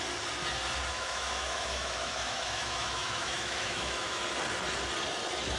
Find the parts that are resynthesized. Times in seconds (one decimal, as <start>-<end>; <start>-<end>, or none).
0.9-4.2